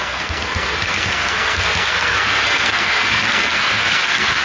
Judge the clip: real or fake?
fake